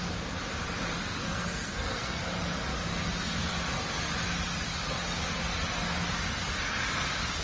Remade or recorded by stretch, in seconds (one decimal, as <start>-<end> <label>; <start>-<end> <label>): 0.0-1.0 recorded; 1.0-2.2 remade; 2.2-7.4 recorded